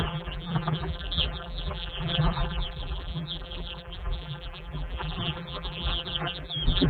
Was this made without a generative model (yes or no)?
no